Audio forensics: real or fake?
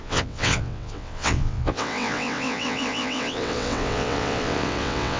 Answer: fake